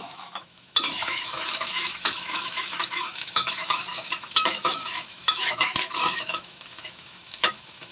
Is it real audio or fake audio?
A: fake